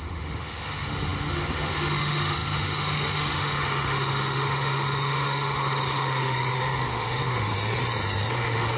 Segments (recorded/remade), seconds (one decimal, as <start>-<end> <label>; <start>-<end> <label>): 0.0-7.5 remade; 7.5-8.3 recorded; 8.3-8.8 remade